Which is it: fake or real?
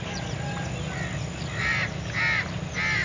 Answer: real